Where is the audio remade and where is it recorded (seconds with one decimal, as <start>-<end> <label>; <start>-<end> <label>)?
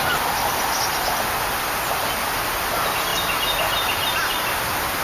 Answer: 0.0-5.0 recorded